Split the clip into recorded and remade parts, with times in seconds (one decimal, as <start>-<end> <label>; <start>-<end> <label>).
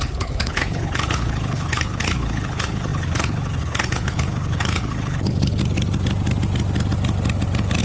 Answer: 0.0-5.6 remade; 5.6-7.8 recorded